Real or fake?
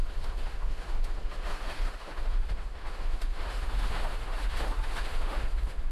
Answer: fake